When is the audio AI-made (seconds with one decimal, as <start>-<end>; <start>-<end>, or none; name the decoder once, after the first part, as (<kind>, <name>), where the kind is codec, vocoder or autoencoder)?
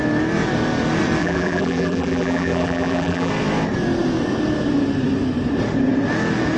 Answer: 1.2-3.3 (vocoder, BigVGAN v2)